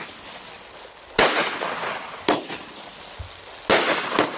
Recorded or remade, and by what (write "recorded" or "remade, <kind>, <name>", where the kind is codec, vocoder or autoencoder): recorded